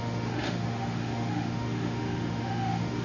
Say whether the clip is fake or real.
fake